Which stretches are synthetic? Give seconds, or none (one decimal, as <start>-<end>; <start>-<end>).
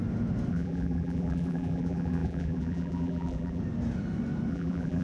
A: 0.5-3.6; 4.5-5.0